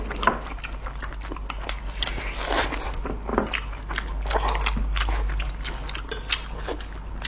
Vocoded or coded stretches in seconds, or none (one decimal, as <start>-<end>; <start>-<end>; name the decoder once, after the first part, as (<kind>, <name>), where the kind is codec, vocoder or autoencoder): none